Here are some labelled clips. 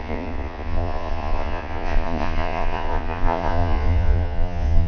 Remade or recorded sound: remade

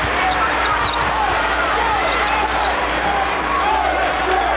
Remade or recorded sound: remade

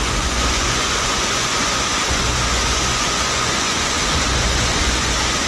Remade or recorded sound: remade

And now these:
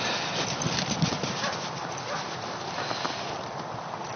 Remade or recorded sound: recorded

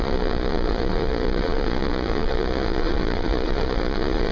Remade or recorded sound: remade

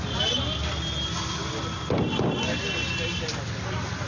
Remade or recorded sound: recorded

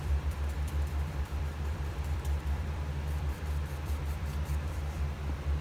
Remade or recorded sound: remade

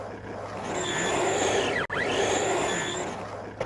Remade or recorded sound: recorded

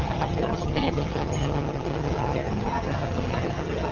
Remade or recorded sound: remade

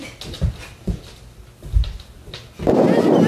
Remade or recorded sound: recorded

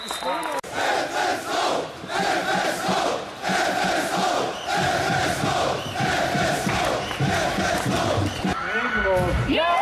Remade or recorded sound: recorded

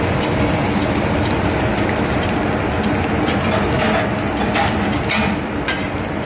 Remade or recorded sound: recorded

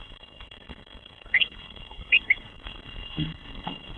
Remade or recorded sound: remade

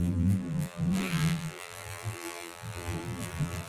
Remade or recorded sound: remade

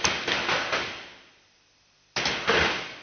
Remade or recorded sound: recorded